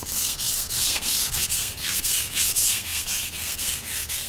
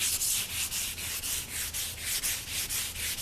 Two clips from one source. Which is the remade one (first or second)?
first